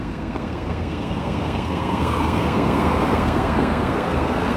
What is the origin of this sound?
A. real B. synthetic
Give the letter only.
B